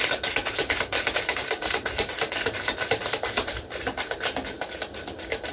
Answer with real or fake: fake